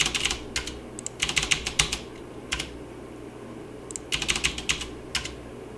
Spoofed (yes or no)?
no